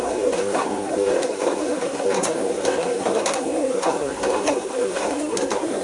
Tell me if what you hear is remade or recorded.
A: remade